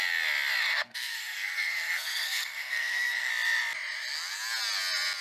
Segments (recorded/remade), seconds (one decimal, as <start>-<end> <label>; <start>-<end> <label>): 0.0-0.7 recorded; 0.7-3.3 remade; 3.3-5.2 recorded